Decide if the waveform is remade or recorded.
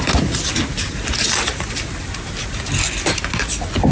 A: recorded